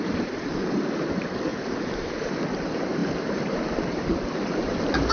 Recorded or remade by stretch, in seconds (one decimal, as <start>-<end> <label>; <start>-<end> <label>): 0.0-5.1 remade